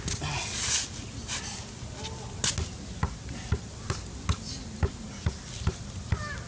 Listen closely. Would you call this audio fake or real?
real